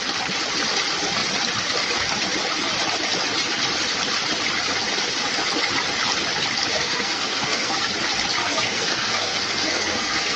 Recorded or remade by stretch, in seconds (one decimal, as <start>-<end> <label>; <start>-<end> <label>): 0.0-6.7 recorded; 6.7-7.9 remade; 7.9-8.4 recorded; 8.4-10.4 remade